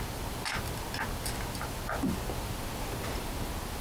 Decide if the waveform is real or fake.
real